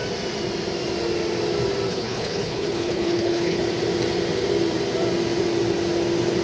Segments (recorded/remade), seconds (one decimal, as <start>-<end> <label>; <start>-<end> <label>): 0.0-1.9 recorded; 1.9-3.6 remade; 3.6-6.4 recorded